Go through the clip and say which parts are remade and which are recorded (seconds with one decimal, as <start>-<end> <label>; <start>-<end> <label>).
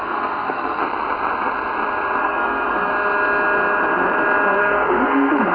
0.0-0.8 remade; 0.8-2.2 recorded; 2.2-2.9 remade; 2.9-4.6 recorded; 4.6-5.5 remade